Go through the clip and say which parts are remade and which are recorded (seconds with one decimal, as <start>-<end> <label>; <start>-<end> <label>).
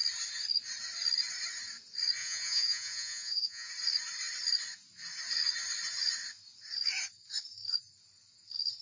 0.0-2.2 recorded; 2.2-3.7 remade; 3.7-8.8 recorded